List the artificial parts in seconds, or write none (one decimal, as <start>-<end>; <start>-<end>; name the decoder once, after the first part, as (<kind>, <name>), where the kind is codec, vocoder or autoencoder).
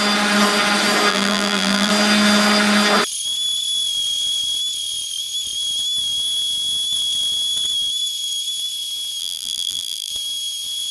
1.1-1.9 (vocoder, BigVGAN v2); 9.2-10.1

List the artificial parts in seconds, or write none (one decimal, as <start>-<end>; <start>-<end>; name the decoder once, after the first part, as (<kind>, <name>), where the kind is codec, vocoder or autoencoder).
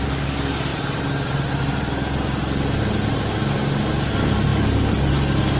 none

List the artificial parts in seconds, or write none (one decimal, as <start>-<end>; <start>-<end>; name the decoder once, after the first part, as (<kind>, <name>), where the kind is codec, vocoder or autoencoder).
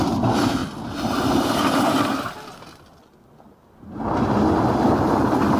none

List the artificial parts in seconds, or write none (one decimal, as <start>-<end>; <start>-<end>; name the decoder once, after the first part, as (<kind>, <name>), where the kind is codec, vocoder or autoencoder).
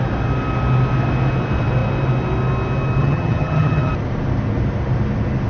3.0-3.9 (vocoder, HiFi-GAN)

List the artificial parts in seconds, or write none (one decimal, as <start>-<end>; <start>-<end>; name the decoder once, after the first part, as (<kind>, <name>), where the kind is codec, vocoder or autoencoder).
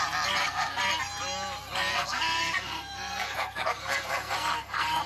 0.4-0.9 (codec, SNAC); 1.9-5.1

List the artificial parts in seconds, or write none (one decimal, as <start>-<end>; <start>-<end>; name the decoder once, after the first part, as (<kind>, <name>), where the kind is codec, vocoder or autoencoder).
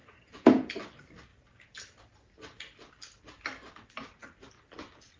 0.0-0.7 (vocoder, Vocos)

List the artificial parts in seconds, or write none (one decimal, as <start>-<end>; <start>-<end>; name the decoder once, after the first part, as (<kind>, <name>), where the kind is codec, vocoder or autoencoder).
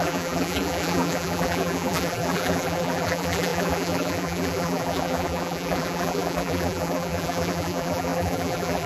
0.0-8.9 (vocoder, BigVGAN v2)